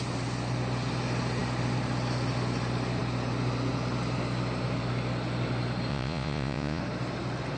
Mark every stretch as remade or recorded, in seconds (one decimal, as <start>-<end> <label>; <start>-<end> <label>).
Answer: 0.0-5.9 recorded; 5.9-6.8 remade; 6.8-7.6 recorded